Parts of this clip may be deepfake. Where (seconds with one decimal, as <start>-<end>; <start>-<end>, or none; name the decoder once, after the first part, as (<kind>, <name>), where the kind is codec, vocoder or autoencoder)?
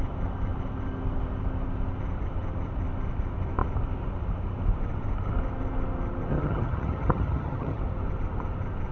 6.3-7.8 (vocoder, HiFi-GAN)